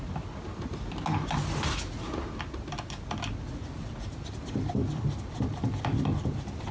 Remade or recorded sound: recorded